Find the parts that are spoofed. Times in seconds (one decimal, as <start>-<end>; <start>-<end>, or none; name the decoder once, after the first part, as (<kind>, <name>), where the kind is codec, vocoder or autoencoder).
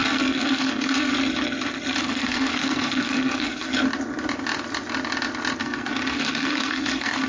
0.0-1.1 (codec, SNAC); 2.0-3.7; 5.6-7.3